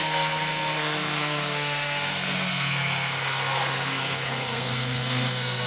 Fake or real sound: fake